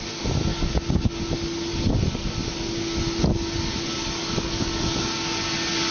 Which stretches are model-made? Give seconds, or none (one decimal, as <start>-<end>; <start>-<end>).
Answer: 0.5-1.1; 1.7-2.3; 3.7-5.0

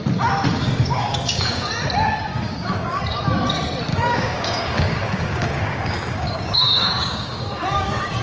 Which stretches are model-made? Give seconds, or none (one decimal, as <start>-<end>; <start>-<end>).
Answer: 0.5-1.7; 2.3-3.0; 3.9-8.2

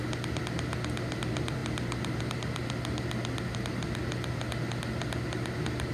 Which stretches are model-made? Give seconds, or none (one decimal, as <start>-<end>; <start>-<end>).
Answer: none

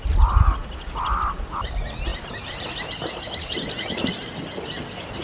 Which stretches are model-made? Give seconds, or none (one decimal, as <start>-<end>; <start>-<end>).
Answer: none